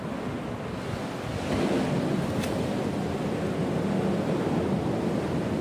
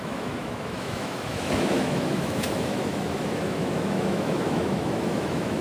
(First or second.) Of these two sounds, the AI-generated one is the second